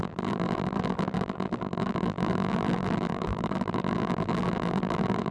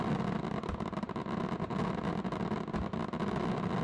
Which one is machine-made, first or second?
first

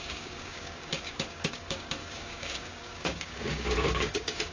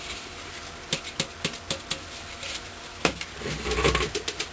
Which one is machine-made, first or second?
first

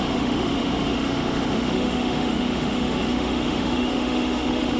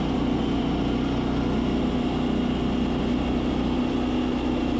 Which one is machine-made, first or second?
first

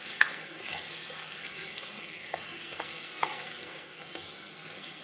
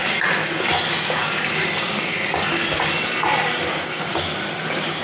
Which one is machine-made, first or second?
first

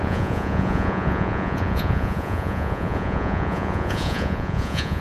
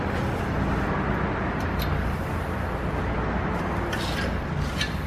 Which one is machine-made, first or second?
first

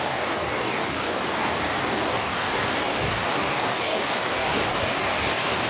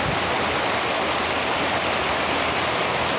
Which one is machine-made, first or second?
first